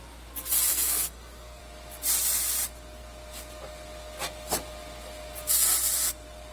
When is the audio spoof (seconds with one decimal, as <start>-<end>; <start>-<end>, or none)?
0.7-1.6